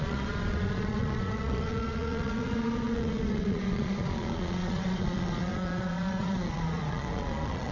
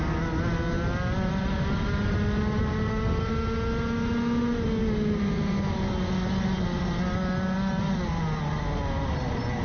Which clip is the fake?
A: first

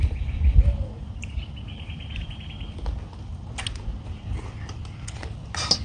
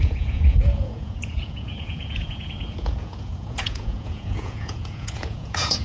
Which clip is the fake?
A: second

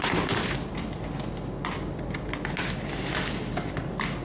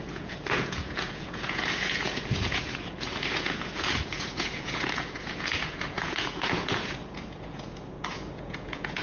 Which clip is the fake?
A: second